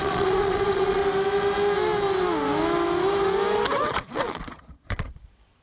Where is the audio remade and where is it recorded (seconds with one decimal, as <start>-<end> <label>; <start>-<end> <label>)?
0.0-1.0 remade; 1.0-3.9 recorded; 3.9-5.6 remade